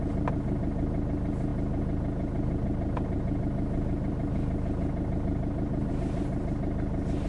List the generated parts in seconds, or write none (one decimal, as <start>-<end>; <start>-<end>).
none